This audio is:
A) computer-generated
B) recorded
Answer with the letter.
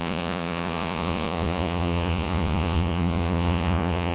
A